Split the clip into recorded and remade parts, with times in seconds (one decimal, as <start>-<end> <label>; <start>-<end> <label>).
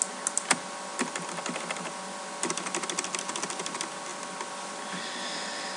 0.0-5.8 recorded